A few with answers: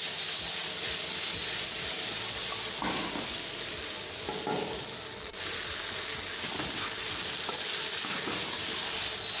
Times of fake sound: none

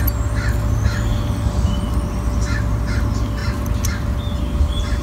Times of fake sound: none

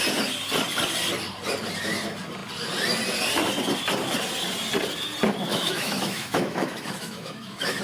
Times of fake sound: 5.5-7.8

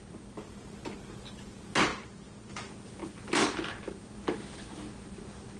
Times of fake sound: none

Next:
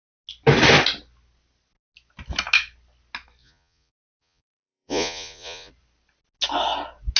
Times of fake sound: 3.4-5.7

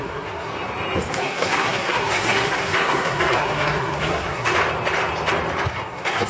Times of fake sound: 0.0-0.5; 1.1-4.5; 5.7-6.3

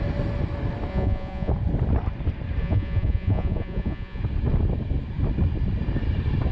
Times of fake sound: 0.9-1.5; 2.6-4.2

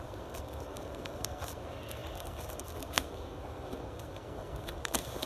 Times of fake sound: 0.0-5.3